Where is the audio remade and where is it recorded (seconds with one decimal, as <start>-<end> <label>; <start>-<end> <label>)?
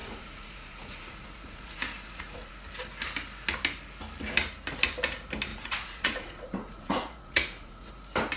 0.0-2.5 remade; 2.5-5.5 recorded; 5.5-7.9 remade; 7.9-8.4 recorded